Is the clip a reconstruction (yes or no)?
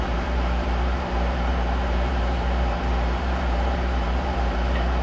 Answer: yes